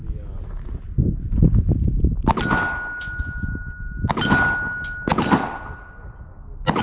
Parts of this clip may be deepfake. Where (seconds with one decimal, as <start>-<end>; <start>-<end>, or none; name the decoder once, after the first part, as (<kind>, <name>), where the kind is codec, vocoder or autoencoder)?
none